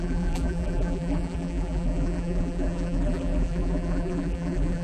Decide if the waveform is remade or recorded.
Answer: remade